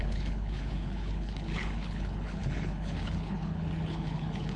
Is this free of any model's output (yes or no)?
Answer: no